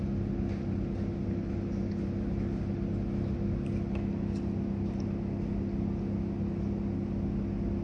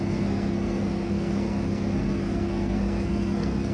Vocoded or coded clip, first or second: second